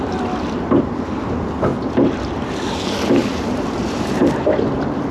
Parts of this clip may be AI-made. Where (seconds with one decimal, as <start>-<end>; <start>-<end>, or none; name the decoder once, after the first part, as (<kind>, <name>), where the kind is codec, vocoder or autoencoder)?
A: 3.2-4.3 (vocoder, BigVGAN v2)